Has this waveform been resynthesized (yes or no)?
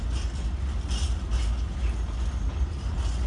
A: no